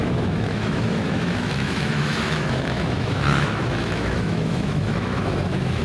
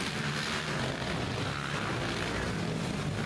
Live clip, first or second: second